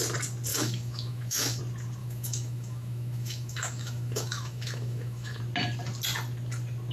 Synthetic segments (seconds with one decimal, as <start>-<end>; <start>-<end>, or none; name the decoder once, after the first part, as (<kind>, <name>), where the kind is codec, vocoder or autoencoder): 0.5-1.6 (autoencoder, DAC-VAE); 2.0-5.4